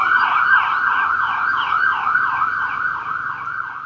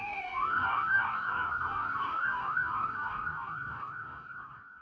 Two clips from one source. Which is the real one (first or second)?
first